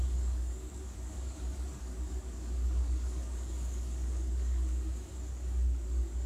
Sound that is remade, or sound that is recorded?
remade